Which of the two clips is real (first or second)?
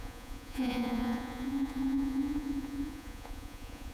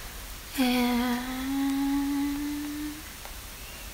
second